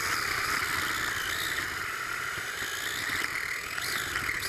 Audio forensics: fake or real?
real